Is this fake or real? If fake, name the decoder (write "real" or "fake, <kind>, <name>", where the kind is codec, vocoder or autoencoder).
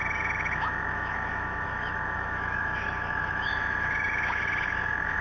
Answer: fake, autoencoder, DAC-VAE